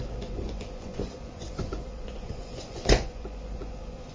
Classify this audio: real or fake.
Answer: fake